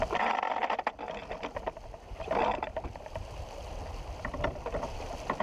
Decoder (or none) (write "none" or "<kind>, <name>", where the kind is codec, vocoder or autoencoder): none